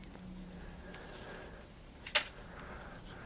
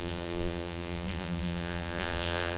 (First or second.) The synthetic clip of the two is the second